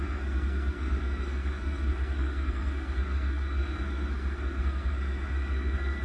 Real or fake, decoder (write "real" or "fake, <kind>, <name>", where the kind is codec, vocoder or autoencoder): fake, codec, SNAC